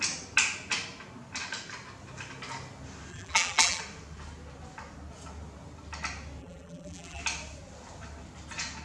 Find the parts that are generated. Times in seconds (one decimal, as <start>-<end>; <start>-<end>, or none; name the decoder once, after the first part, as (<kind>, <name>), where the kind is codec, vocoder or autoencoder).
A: 3.1-3.8 (vocoder, BigVGAN v2); 6.4-7.2